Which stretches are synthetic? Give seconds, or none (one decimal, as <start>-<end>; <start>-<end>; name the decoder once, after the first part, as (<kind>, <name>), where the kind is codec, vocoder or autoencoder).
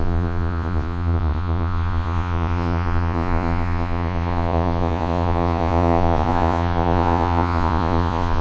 0.0-8.4 (vocoder, Vocos)